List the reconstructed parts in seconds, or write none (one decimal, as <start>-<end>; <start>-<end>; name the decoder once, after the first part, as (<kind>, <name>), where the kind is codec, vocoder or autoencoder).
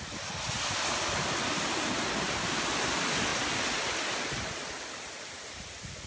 none